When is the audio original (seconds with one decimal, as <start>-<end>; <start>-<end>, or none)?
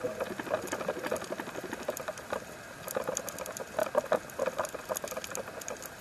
0.0-6.0